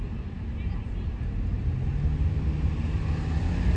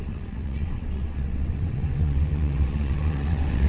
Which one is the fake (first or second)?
second